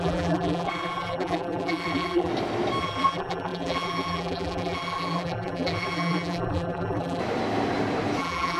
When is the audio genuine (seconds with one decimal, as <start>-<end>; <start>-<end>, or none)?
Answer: 2.3-2.8; 7.2-8.2